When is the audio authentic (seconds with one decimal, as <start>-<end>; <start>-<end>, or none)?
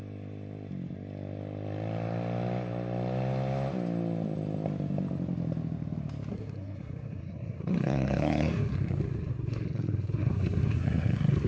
0.0-6.3